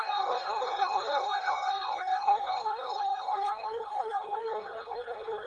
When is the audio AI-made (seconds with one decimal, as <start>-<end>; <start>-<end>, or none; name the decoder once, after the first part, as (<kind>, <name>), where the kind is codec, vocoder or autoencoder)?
0.0-5.5 (codec, SNAC)